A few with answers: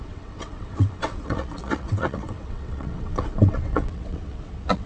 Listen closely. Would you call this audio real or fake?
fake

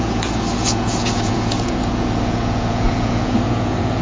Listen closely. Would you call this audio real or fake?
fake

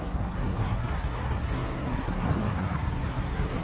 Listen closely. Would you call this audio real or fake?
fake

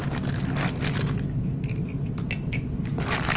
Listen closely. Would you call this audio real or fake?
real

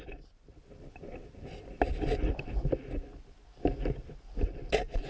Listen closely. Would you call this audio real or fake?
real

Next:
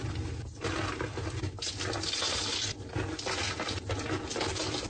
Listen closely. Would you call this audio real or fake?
real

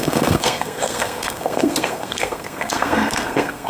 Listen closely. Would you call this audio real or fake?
fake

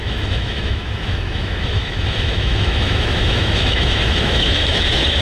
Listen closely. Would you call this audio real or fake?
fake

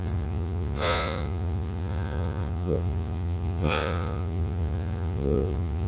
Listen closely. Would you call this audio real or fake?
fake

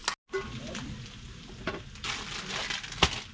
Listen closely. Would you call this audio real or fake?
real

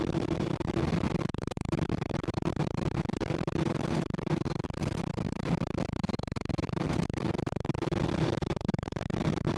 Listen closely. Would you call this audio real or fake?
fake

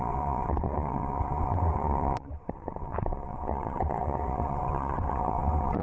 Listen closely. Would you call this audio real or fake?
fake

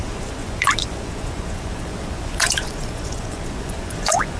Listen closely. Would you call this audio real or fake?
fake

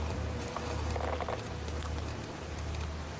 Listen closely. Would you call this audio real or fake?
fake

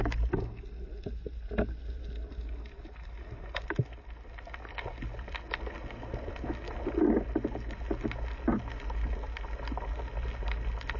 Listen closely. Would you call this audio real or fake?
real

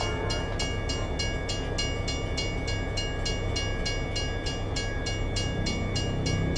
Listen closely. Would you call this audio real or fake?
real